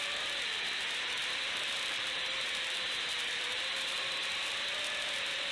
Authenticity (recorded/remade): remade